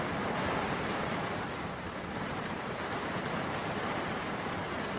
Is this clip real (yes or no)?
no